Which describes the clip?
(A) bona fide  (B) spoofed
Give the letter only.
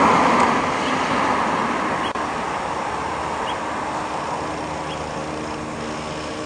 A